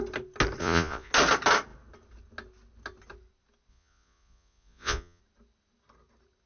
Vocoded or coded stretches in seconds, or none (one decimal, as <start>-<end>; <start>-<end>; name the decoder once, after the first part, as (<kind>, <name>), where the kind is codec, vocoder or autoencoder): 0.6-1.1 (vocoder, Vocos); 3.7-5.2